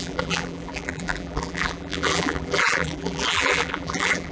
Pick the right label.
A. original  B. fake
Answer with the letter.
B